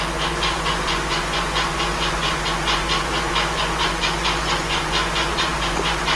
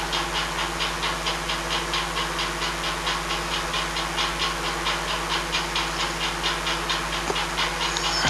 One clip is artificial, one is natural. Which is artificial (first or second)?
first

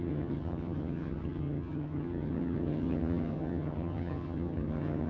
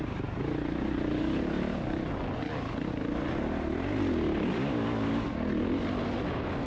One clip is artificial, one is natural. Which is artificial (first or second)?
first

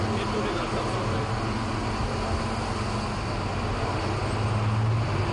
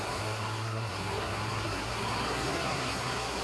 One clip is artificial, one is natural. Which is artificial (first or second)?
second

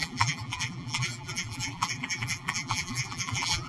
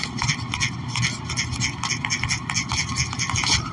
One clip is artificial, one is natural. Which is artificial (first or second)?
first